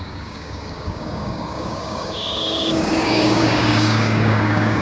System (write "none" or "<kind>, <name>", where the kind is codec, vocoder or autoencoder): codec, DAC